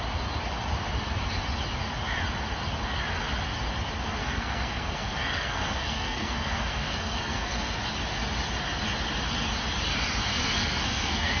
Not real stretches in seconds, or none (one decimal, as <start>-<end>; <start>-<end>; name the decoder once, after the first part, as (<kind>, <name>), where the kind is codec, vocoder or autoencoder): 4.2-7.8 (codec, SNAC); 10.3-11.4